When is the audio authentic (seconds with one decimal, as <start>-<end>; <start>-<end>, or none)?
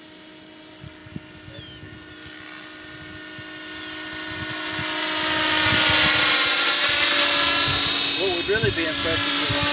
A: 0.0-9.7